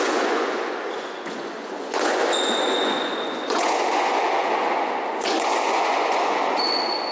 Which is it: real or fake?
fake